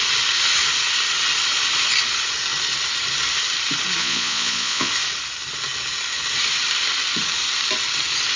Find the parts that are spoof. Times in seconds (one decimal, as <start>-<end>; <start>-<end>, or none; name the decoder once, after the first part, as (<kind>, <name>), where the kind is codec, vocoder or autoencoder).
4.0-4.9 (vocoder, Vocos)

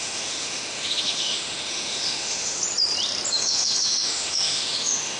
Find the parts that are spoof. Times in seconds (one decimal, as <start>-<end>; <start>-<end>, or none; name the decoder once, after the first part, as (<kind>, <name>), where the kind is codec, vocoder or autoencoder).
0.0-2.6 (autoencoder, DAC-VAE); 3.3-5.2

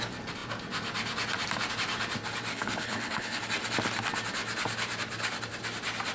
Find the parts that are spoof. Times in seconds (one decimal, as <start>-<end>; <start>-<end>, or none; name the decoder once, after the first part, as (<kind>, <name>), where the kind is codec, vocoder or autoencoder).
2.5-3.4 (codec, HILCodec)

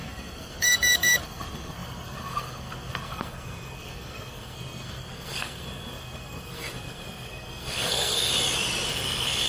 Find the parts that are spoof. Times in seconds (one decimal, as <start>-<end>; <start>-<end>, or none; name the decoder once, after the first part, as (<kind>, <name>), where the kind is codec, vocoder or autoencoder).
0.0-8.3 (codec, SNAC); 8.9-9.5

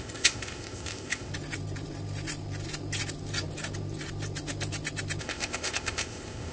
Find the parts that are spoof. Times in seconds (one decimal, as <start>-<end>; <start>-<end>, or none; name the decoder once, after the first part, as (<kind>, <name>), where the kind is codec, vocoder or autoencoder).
0.0-1.3 (codec, ZipCodec); 5.2-6.5

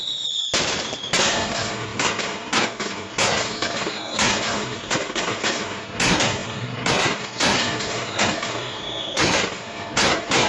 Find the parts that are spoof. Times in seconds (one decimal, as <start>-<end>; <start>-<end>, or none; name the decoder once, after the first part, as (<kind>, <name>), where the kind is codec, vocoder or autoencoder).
1.2-10.5 (codec, SNAC)